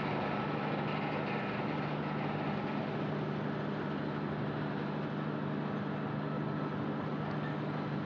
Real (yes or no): yes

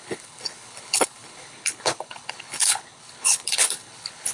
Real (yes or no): no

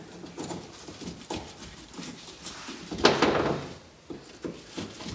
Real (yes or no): yes